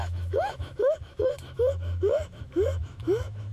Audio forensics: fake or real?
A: fake